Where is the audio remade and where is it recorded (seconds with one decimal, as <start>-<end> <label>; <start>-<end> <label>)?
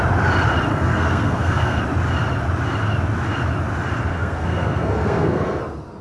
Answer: 0.0-0.7 recorded; 0.7-1.8 remade; 1.8-4.1 recorded; 4.1-5.6 remade; 5.6-6.0 recorded